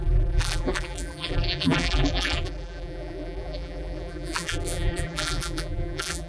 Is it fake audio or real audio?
fake